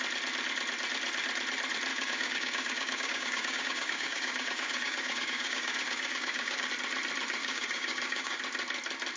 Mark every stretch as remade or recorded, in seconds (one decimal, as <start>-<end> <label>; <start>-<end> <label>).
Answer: 0.0-1.9 recorded; 1.9-6.7 remade; 6.7-7.4 recorded; 7.4-8.4 remade; 8.4-9.2 recorded